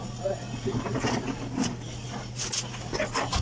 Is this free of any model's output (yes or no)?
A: yes